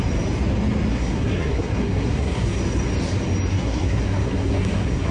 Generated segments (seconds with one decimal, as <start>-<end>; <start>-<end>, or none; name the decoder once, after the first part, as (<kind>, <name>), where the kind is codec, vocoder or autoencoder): 0.9-2.6 (codec, SNAC); 3.5-5.1